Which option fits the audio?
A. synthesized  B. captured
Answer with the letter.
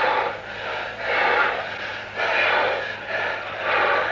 B